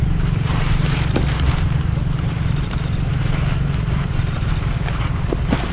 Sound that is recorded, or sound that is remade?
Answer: remade